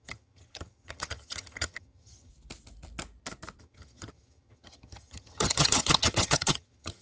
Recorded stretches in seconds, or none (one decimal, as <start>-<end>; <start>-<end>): 2.3-3.6